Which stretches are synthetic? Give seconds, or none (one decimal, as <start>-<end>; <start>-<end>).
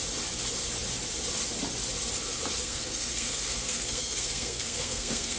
2.6-5.4